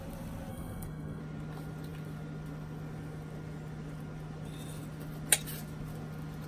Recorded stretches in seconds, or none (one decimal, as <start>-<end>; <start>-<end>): 0.0-0.5; 1.2-6.5